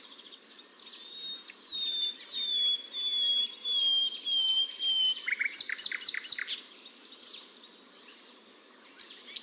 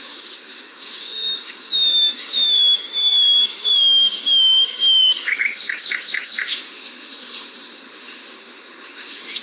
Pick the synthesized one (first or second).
second